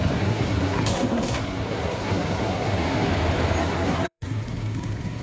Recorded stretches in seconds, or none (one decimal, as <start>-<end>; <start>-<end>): 3.1-3.6